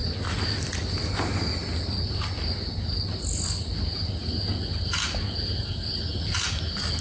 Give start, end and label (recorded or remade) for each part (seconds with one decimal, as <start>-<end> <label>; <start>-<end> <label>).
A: 0.0-7.0 recorded